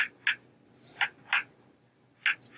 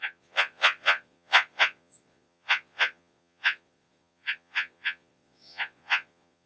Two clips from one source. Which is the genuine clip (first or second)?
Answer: first